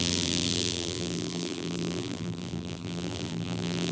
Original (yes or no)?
no